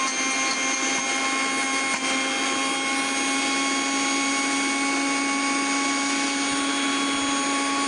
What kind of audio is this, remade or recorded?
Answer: recorded